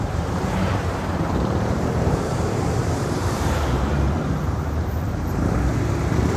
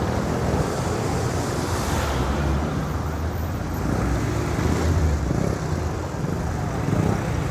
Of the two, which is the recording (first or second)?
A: second